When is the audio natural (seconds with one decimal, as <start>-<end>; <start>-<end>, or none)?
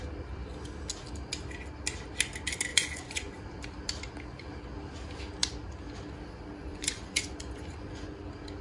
0.0-2.7; 3.3-6.6; 8.2-8.6